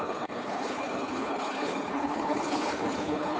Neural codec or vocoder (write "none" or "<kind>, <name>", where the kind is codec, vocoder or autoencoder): codec, HILCodec